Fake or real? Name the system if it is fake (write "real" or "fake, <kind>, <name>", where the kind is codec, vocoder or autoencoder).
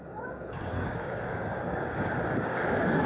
fake, codec, DAC